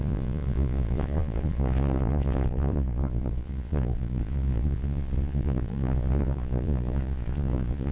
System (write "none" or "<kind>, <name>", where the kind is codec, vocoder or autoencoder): vocoder, Vocos